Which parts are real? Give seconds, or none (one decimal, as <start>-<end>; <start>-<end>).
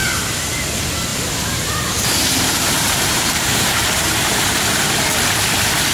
0.0-1.1; 4.6-5.9